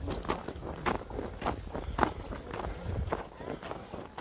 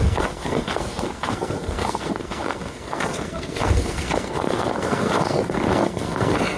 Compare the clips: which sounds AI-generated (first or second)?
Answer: second